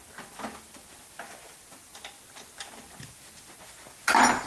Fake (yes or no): no